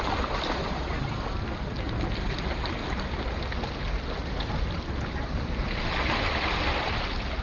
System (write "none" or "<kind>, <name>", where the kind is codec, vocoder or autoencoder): none